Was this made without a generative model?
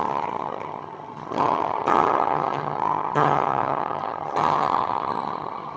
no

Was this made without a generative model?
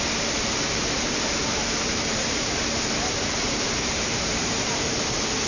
no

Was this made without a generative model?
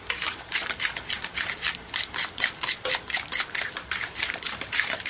no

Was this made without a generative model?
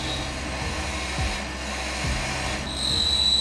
yes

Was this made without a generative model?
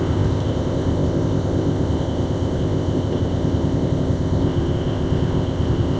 no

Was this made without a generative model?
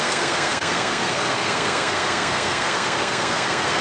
no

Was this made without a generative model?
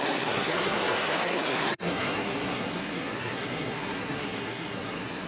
no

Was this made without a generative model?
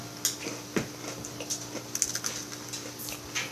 yes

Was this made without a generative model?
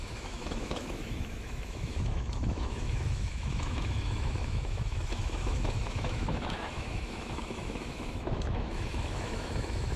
no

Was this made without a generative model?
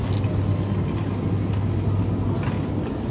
yes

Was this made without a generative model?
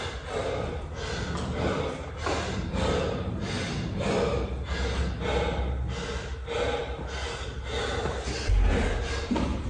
yes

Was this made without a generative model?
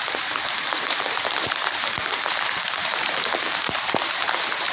no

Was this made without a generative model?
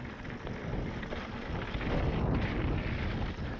yes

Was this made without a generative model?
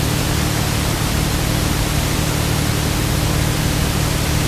yes